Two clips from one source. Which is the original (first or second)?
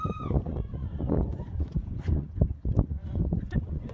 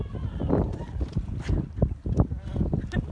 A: second